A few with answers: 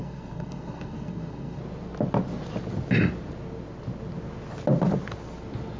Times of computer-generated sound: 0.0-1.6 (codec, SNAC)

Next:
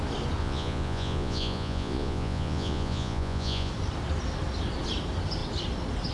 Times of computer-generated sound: 0.4-3.7 (vocoder, Vocos)

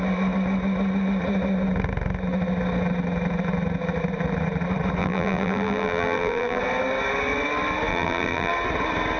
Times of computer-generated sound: 5.0-6.6 (vocoder, BigVGAN v2); 7.9-8.5